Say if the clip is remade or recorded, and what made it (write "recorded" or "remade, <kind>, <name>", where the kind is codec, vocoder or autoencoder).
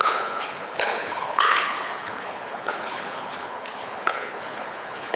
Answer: remade, codec, HILCodec